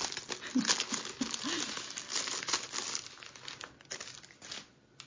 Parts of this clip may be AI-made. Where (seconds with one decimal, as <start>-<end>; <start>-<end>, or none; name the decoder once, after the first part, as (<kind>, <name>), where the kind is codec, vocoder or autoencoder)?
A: none